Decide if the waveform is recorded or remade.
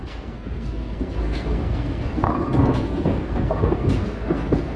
remade